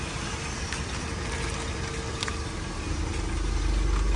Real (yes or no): yes